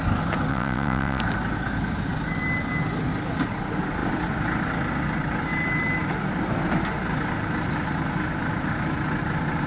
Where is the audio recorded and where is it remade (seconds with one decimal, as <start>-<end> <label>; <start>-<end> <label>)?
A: 0.0-0.5 recorded; 0.5-1.2 remade; 1.2-9.7 recorded